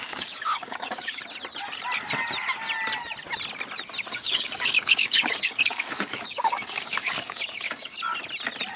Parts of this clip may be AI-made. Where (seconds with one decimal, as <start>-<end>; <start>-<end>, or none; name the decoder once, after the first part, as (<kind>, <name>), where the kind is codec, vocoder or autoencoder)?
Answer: 0.0-1.2 (codec, DAC); 4.1-8.0